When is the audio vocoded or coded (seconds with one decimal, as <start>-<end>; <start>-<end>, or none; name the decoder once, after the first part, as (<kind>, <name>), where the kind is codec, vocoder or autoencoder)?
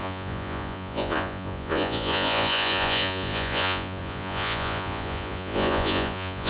0.0-6.5 (vocoder, Vocos)